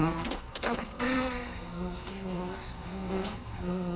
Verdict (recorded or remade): remade